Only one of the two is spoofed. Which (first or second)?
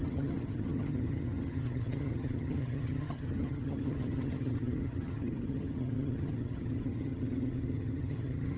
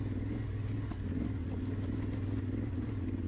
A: first